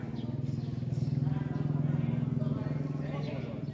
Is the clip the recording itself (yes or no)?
yes